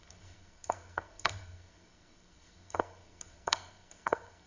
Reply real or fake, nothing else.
fake